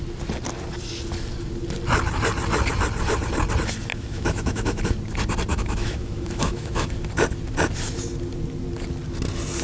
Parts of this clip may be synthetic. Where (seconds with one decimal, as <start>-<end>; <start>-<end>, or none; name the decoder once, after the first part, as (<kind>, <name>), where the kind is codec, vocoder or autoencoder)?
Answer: 3.9-4.8 (autoencoder, DAC-VAE); 5.5-6.9